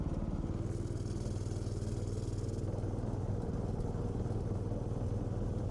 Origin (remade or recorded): recorded